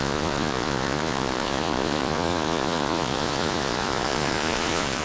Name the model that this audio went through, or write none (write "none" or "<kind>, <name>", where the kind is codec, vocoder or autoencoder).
vocoder, Vocos